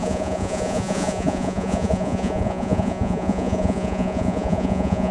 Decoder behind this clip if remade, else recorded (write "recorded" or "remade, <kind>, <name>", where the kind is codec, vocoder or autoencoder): remade, vocoder, Vocos